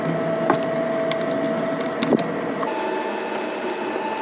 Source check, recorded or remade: recorded